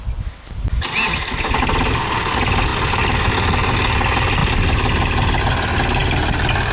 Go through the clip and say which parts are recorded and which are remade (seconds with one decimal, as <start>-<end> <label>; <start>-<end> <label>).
0.0-6.7 recorded